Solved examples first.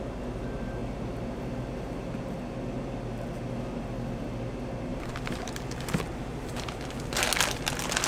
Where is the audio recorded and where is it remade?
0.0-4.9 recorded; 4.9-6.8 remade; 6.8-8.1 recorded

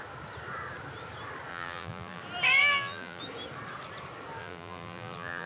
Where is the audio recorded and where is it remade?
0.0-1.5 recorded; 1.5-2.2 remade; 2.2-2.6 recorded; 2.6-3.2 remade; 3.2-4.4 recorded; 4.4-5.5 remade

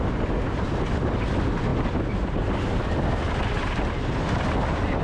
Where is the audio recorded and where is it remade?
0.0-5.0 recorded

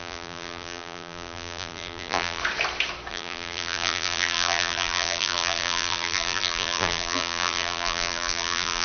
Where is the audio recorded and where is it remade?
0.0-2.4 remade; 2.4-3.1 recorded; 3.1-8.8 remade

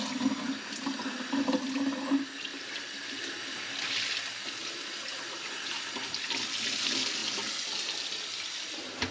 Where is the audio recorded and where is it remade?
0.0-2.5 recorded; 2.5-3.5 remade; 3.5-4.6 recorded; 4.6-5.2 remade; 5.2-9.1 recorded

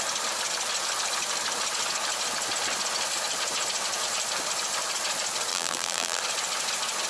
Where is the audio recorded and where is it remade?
0.0-5.5 recorded; 5.5-6.2 remade; 6.2-7.1 recorded

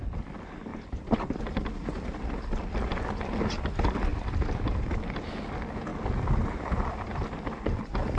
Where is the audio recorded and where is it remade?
0.0-0.7 recorded; 0.7-1.4 remade; 1.4-4.1 recorded; 4.1-4.9 remade; 4.9-8.2 recorded